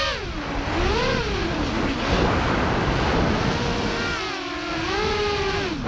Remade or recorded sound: recorded